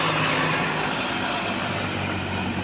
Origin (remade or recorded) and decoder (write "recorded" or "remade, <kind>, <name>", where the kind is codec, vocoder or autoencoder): recorded